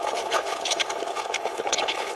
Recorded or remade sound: remade